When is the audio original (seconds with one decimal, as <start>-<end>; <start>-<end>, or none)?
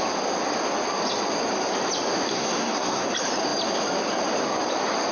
0.0-2.3; 3.1-5.1